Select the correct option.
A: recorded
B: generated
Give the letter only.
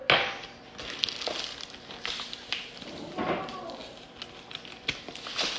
A